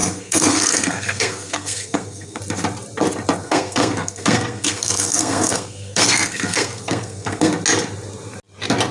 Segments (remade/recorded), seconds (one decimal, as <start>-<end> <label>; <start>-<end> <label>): 0.0-2.4 remade; 2.4-3.4 recorded; 3.4-7.5 remade; 7.5-8.9 recorded